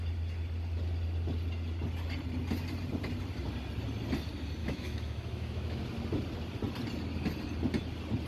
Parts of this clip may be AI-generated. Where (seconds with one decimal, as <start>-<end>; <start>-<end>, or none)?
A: 4.6-5.8